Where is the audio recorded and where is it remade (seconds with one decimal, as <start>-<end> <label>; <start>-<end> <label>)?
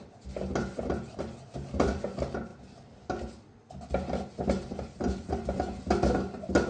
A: 0.0-6.7 recorded